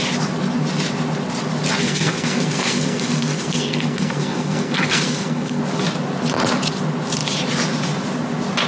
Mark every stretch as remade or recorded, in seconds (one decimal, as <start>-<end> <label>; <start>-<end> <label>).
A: 0.0-1.8 recorded; 1.8-5.6 remade; 5.6-8.7 recorded